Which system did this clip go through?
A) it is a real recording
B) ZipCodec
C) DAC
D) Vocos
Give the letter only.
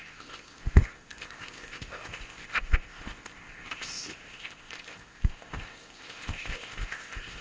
B